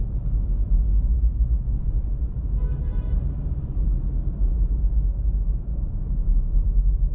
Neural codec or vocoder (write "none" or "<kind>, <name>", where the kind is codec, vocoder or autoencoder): vocoder, BigVGAN v2